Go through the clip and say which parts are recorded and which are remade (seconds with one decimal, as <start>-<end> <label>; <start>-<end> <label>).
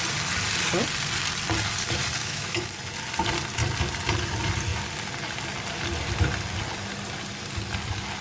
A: 0.0-2.2 recorded; 2.2-2.7 remade; 2.7-8.2 recorded